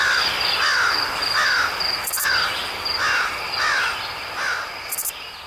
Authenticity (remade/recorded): recorded